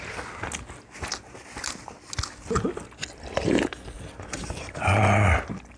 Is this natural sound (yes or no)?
yes